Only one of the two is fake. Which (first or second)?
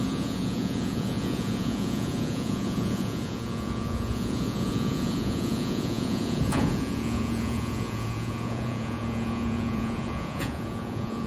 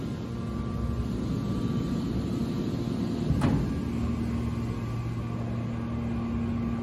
first